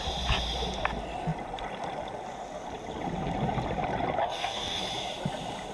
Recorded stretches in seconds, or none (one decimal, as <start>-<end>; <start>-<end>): 0.0-4.2; 4.8-5.7